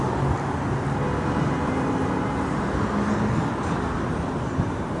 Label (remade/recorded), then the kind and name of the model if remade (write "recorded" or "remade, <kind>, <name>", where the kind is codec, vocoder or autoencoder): recorded